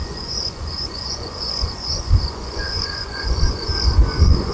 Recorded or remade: remade